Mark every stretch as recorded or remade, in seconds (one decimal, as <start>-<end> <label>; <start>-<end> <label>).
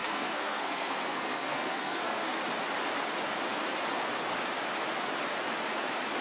0.0-2.4 remade; 2.4-6.2 recorded